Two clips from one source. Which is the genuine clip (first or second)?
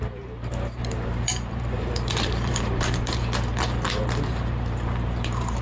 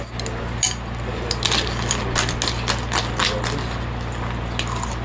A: second